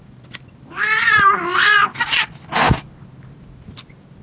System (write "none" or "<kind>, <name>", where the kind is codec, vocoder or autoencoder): none